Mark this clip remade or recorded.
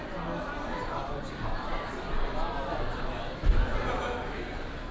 recorded